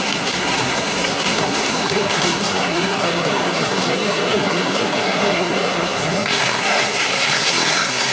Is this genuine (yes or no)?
no